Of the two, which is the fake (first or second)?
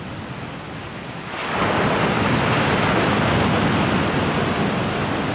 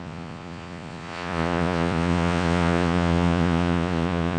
second